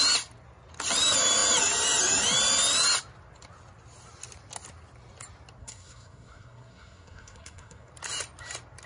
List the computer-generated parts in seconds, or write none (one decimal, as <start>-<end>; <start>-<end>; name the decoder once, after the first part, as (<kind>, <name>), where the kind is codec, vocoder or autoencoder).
5.6-7.9 (codec, SNAC)